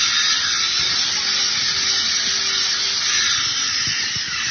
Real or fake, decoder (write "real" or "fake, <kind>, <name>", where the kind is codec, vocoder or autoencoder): real